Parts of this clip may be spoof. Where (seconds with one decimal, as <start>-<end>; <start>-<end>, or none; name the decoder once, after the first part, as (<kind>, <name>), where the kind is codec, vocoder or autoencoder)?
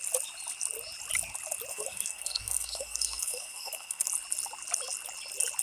1.7-4.1 (codec, SNAC)